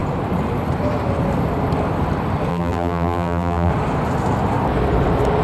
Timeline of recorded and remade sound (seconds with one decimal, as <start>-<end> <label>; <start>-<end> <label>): 0.0-2.5 recorded; 2.5-3.7 remade; 3.7-5.4 recorded